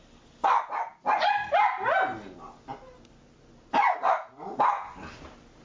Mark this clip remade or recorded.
recorded